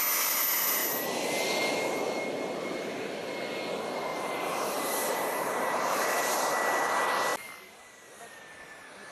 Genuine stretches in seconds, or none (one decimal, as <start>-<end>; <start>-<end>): 0.0-4.1; 6.5-9.1